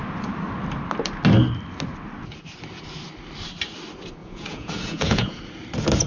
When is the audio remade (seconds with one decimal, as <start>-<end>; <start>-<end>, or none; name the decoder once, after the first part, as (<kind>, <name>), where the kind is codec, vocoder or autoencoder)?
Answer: 4.2-5.4 (vocoder, Vocos)